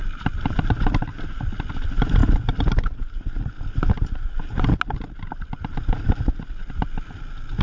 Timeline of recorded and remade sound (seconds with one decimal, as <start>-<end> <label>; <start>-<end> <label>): 0.0-7.6 recorded